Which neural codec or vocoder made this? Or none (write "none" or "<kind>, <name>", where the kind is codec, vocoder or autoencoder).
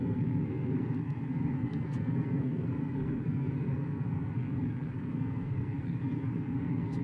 codec, SNAC